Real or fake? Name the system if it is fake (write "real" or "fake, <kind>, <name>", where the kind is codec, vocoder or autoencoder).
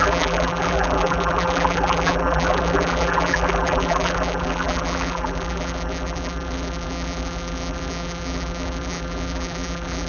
fake, vocoder, BigVGAN v2